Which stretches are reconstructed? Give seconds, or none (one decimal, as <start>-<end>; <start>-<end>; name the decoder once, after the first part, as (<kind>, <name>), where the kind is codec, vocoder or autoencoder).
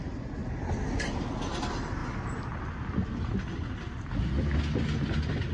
0.0-0.4 (vocoder, BigVGAN v2); 0.9-2.0